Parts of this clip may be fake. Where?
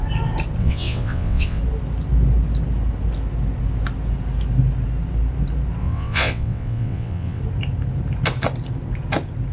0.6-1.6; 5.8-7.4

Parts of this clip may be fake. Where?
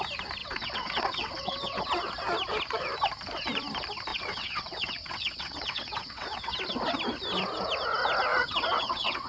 0.4-1.8; 4.1-6.5; 8.3-9.3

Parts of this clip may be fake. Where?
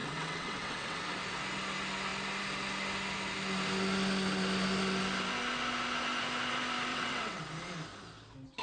0.0-1.0; 6.9-7.4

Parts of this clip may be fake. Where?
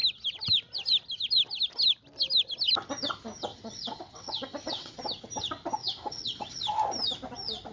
3.5-5.0; 5.8-6.6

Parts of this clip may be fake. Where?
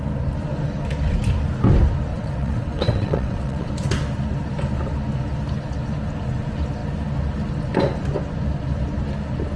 2.1-3.7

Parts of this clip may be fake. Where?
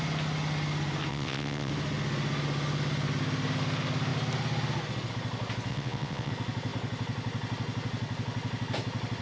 1.1-1.7; 5.7-6.3